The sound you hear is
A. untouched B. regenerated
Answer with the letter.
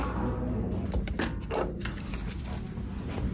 A